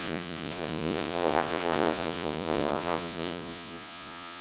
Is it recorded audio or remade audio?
remade